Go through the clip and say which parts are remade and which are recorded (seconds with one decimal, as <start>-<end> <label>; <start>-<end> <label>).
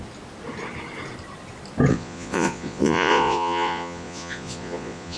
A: 0.0-1.9 recorded; 1.9-5.2 remade